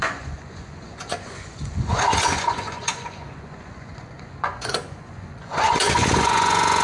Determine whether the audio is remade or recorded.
remade